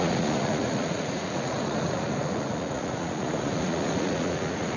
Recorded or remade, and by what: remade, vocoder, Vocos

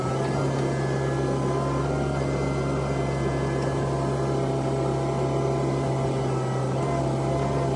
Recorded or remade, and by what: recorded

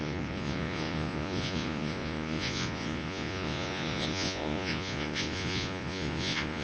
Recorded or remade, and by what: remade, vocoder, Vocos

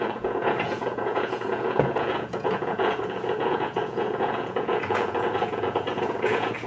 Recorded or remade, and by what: remade, vocoder, Vocos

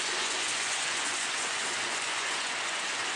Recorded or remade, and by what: remade, vocoder, Vocos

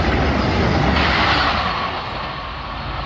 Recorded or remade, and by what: recorded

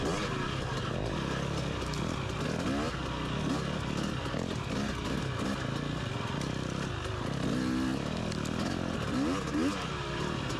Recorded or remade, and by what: recorded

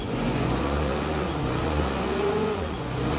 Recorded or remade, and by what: remade, vocoder, Vocos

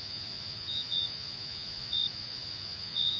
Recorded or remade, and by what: remade, vocoder, Vocos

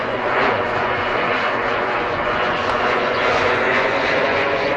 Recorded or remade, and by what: remade, vocoder, Vocos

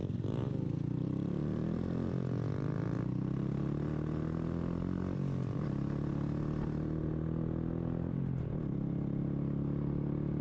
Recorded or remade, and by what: recorded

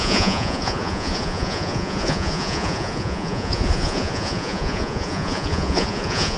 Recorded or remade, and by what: remade, vocoder, Vocos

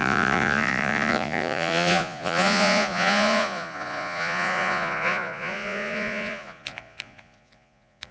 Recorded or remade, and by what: remade, vocoder, Vocos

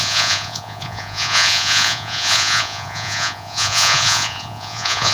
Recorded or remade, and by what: remade, vocoder, Vocos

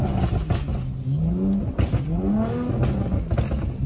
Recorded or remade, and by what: recorded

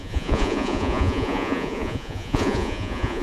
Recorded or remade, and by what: remade, vocoder, Vocos